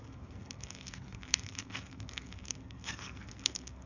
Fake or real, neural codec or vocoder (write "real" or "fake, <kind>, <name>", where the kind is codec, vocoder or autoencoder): fake, codec, SNAC